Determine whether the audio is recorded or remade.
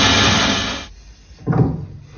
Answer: recorded